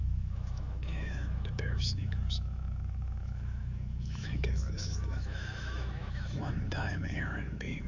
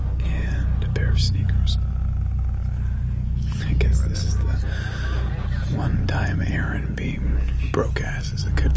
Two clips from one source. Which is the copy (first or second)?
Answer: first